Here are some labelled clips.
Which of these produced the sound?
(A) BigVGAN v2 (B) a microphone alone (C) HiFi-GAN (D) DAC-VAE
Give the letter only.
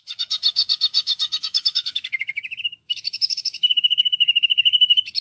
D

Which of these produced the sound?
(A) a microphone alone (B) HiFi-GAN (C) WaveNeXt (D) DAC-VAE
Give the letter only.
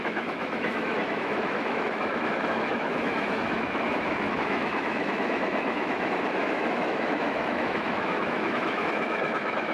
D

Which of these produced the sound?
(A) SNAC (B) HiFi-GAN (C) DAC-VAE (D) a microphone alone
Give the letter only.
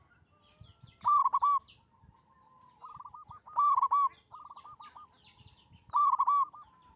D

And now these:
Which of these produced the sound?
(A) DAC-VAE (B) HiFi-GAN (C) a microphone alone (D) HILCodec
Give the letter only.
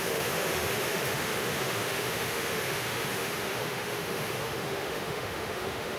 A